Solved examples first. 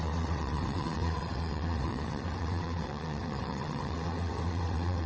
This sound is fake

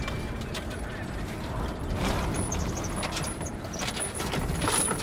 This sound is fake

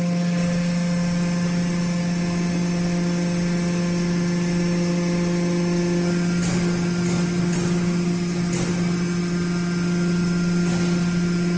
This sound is real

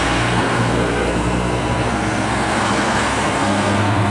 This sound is fake